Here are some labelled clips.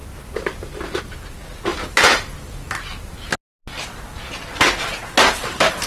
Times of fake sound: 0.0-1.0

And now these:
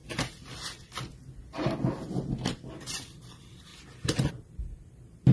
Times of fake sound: 3.2-3.7; 4.3-5.3

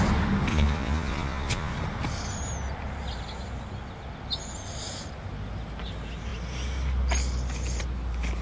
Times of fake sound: 0.5-1.7

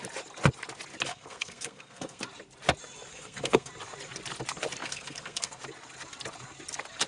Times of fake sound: 1.1-2.2; 3.1-3.7; 4.8-5.6

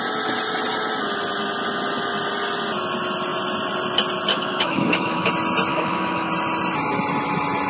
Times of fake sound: 4.3-5.3; 5.7-6.3